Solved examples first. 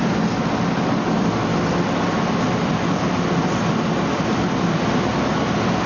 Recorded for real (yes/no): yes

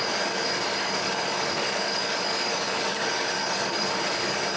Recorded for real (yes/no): no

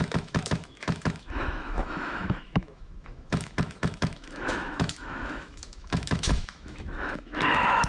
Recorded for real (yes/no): no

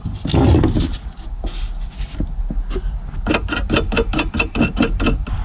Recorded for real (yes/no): yes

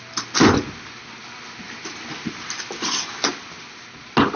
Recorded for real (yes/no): yes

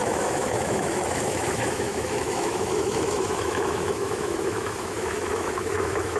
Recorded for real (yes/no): no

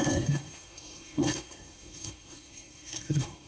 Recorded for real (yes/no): no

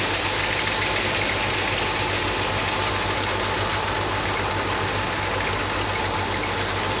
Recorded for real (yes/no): yes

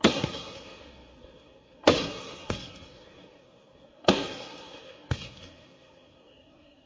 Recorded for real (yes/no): no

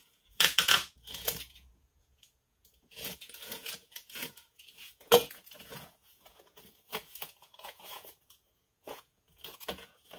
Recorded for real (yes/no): no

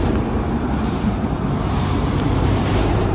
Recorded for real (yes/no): no